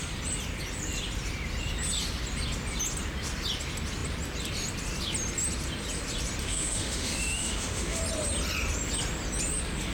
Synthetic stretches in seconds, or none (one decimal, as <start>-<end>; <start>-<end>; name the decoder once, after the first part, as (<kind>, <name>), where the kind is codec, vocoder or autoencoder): 6.4-8.0 (autoencoder, DAC-VAE)